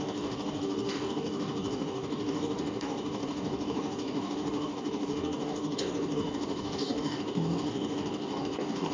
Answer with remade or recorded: remade